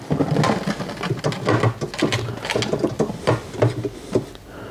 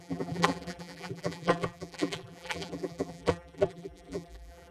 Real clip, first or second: first